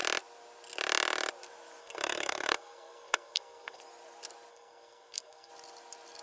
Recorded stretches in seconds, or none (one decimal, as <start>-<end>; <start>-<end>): 0.0-1.8; 3.8-4.5; 5.5-6.2

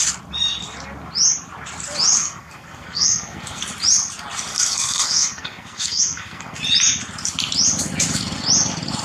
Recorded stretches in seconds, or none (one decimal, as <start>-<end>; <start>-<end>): 0.0-2.2; 3.6-4.5; 6.6-9.0

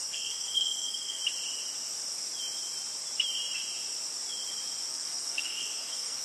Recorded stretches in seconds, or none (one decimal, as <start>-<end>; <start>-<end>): 1.2-4.9

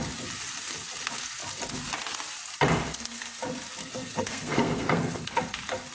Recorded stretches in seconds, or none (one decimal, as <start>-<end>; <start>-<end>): 0.0-2.9; 3.4-3.8; 5.4-5.9

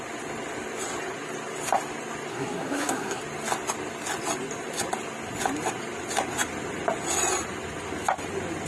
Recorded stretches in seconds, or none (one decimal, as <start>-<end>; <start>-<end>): 0.0-2.3; 3.2-8.7

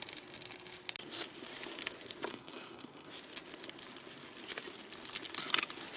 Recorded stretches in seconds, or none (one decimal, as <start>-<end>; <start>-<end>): 0.0-2.3; 3.1-6.0

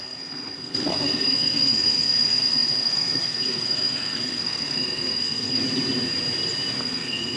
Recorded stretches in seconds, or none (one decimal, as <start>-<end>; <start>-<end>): 5.6-6.8